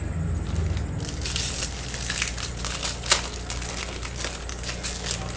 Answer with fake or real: real